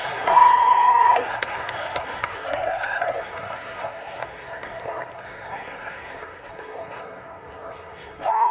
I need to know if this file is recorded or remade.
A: remade